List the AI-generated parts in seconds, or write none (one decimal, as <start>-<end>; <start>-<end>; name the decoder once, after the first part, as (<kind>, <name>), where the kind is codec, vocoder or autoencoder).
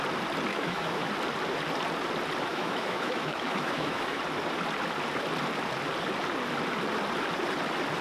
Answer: 0.5-1.1 (autoencoder, DAC-VAE); 2.5-4.2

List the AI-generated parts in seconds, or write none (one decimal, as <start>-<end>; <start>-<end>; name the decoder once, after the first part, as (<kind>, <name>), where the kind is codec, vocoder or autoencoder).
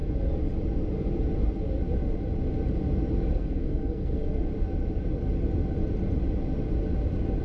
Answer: 3.3-4.5 (codec, SNAC)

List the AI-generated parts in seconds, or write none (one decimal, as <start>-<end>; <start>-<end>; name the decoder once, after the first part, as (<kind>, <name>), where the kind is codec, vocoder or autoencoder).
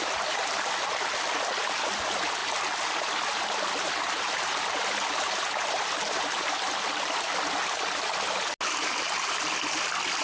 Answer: none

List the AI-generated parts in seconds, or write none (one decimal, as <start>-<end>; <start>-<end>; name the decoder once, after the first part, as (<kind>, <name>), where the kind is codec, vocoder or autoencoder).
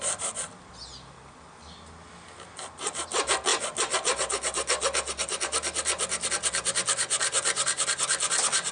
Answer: none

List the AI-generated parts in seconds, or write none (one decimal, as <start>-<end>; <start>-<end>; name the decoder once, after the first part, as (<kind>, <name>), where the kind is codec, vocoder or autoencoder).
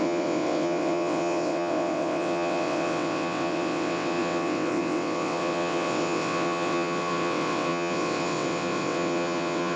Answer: 0.0-9.8 (vocoder, WaveNeXt)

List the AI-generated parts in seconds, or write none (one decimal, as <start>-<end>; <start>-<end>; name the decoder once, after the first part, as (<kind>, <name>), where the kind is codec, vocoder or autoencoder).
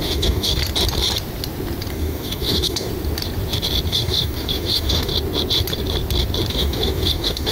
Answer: 0.0-0.6 (codec, DAC); 1.9-2.9; 3.9-5.1; 6.5-7.5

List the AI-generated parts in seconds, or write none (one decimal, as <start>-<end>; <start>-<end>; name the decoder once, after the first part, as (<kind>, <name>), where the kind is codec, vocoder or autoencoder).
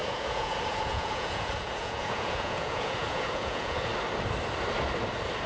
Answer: 0.0-3.9 (vocoder, Vocos)